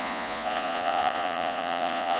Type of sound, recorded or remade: remade